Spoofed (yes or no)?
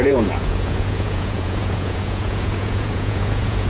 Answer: yes